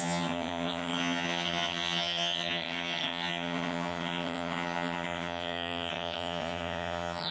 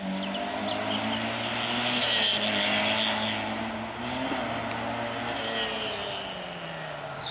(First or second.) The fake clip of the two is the first